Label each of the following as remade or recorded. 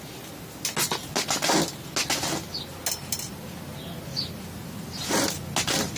recorded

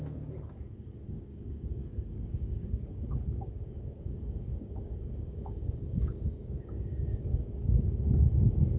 remade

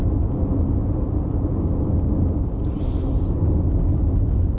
recorded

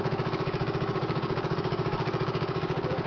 remade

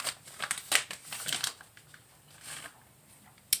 recorded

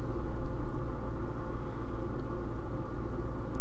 recorded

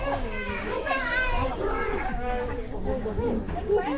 remade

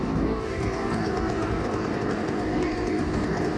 remade